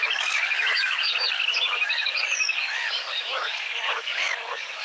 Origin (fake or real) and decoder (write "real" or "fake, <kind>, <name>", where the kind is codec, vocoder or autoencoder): fake, codec, DAC